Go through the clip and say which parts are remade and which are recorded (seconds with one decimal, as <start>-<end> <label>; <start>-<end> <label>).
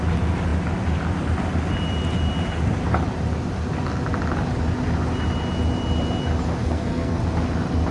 0.0-6.6 recorded; 6.6-7.2 remade; 7.2-7.9 recorded